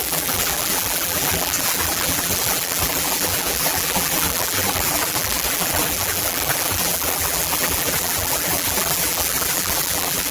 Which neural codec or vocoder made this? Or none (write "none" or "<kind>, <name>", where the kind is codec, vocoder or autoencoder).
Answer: vocoder, BigVGAN v2